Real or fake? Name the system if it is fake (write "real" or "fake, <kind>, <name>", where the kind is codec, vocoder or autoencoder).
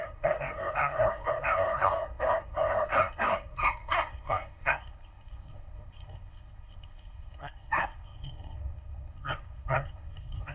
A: fake, codec, SNAC